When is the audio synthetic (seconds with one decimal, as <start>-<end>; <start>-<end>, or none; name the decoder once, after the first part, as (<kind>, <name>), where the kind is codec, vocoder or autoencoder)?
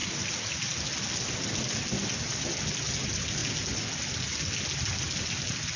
none